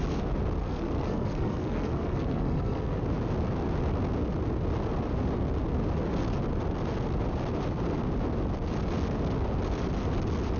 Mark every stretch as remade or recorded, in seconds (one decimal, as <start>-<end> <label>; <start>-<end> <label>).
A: 0.0-0.6 recorded; 0.6-3.0 remade; 3.0-10.6 recorded